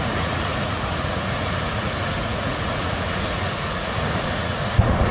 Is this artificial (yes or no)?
yes